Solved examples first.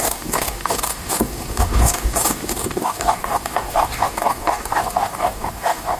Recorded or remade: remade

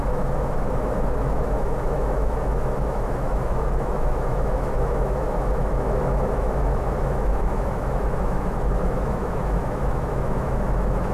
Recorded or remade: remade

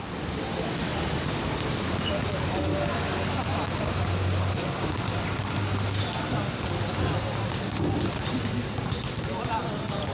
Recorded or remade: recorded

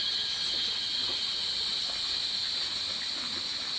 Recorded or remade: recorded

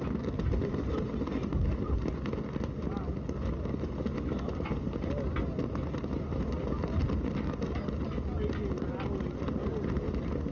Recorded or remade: recorded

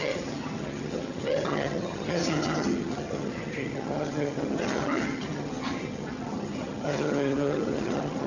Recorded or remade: remade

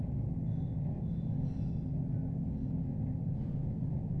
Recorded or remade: recorded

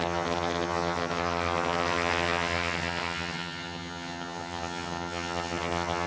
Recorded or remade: remade